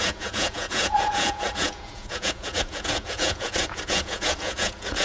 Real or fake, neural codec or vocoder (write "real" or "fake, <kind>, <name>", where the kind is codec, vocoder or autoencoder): fake, vocoder, Vocos